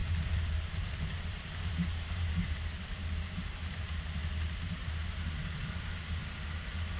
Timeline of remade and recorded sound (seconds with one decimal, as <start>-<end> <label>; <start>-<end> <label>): 0.0-2.3 remade; 2.3-7.0 recorded